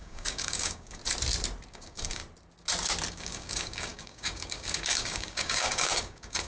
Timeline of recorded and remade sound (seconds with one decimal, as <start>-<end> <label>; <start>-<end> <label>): 0.0-1.0 remade; 1.0-1.7 recorded; 1.7-2.2 remade; 2.2-3.1 recorded; 3.1-6.5 remade